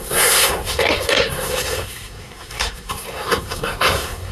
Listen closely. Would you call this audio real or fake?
fake